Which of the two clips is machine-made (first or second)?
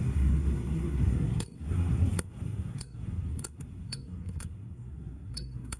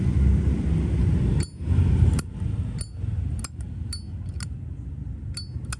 first